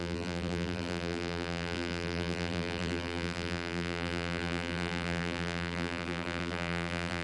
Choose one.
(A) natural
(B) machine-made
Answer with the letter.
B